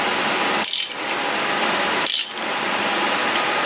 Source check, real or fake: real